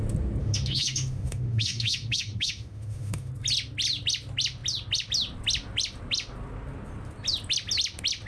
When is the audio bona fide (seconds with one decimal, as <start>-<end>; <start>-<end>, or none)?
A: 0.0-0.4; 3.3-8.3